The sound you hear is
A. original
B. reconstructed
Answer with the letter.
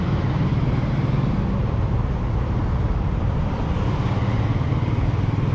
B